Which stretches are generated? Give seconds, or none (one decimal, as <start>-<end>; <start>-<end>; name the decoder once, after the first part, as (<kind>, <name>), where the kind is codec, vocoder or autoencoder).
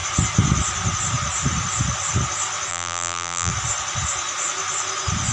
2.7-3.5 (vocoder, BigVGAN v2)